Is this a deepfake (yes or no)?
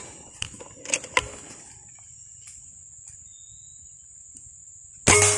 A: no